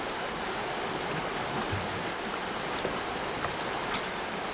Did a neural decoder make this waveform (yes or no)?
no